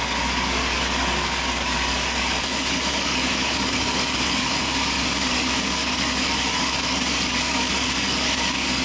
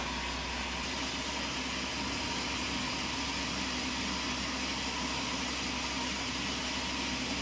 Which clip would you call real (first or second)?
second